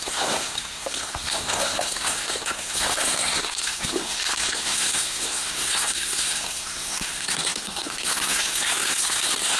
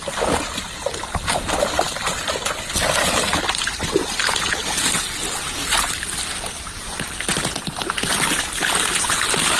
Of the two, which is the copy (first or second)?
first